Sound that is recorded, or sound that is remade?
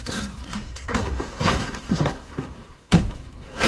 remade